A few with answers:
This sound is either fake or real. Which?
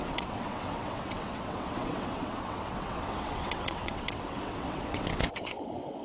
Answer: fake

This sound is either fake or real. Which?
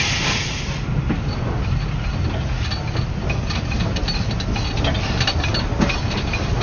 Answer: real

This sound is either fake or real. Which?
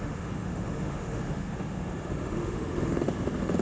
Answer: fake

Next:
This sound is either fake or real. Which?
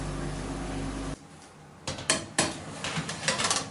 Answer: real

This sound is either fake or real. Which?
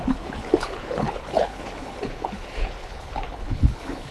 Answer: fake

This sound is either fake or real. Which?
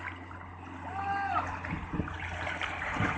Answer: real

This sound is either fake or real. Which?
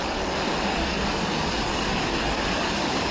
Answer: fake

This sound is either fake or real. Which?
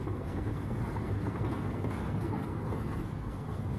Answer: fake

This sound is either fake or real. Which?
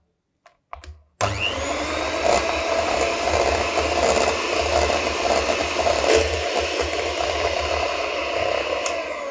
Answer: real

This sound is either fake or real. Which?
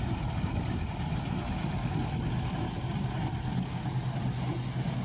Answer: real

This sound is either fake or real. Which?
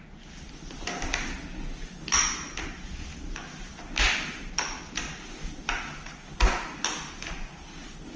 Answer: real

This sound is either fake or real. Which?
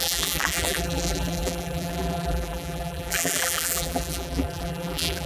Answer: fake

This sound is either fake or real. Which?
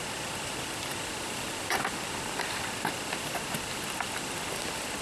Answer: real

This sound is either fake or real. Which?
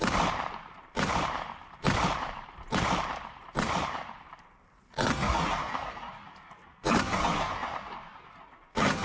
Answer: fake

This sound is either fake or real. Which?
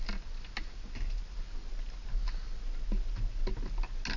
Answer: real